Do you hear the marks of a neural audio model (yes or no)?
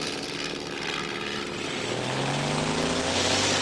no